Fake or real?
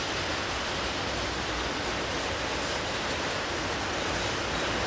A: real